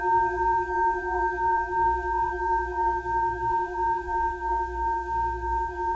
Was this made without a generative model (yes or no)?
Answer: no